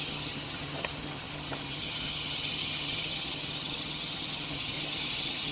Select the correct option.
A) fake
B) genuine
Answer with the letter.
A